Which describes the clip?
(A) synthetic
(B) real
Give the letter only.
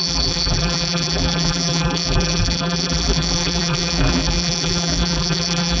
A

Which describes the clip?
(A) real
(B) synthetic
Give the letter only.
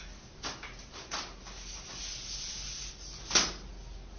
A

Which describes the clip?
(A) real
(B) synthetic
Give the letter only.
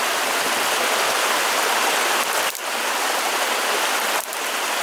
A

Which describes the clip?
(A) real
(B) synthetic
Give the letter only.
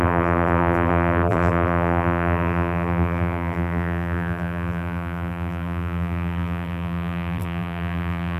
B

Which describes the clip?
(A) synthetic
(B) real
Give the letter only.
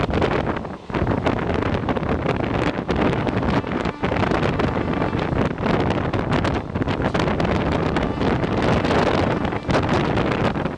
B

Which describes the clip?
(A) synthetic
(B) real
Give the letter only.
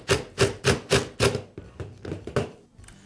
B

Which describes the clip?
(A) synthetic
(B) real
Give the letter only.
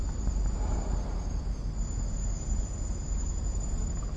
B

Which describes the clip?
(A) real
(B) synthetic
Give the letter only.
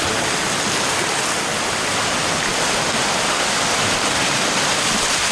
A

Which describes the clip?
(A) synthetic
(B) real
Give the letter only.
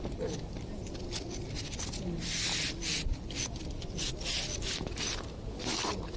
B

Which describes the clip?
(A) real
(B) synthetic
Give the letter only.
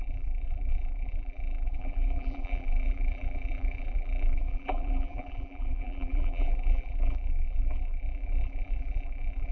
B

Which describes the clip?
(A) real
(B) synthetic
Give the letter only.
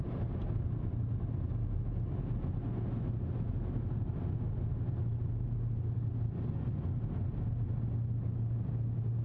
A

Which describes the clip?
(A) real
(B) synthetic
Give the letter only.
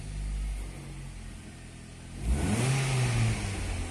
A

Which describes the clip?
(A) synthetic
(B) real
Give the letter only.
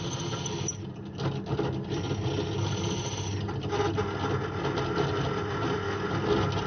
B